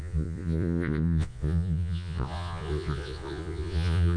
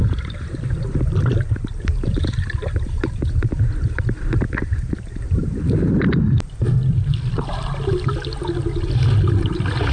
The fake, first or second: first